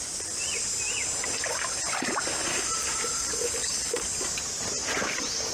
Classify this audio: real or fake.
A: real